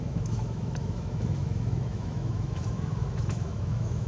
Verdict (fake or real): fake